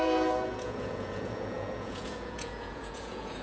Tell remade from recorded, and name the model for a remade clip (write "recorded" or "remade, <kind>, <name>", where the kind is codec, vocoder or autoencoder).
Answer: remade, vocoder, Vocos